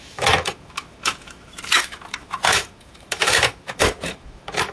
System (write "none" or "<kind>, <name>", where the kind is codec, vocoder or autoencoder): autoencoder, DAC-VAE